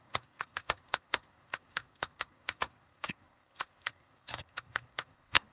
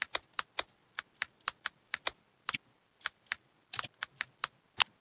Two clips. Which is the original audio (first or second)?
second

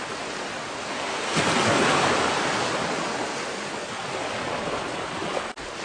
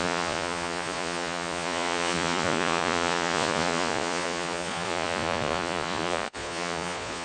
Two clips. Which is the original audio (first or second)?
first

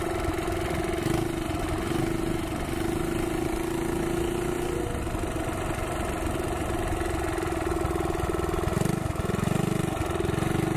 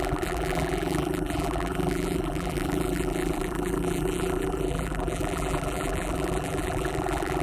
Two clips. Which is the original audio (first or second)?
first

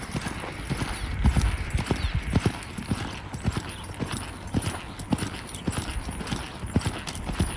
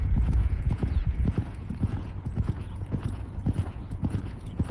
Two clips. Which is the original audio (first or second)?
first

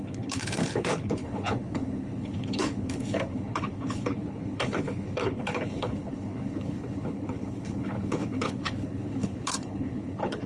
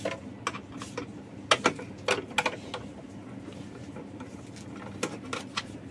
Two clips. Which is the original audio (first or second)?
second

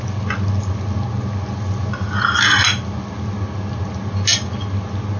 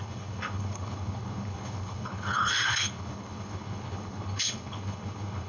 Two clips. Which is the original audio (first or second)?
first